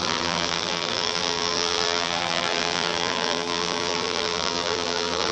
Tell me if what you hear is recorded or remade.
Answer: remade